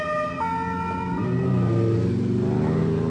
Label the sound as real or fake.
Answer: real